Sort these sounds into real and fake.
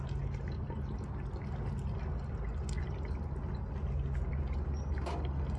real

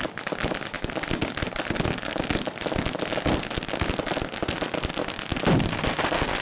real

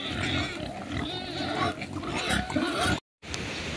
real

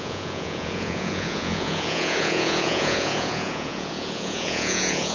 fake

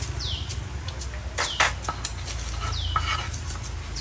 real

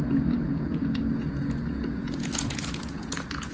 fake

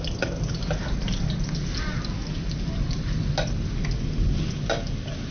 real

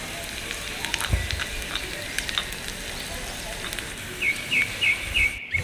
real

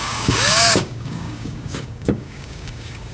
fake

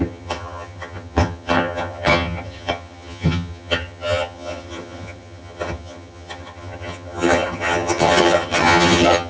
fake